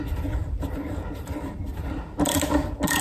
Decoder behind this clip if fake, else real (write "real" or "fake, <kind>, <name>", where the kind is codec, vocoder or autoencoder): real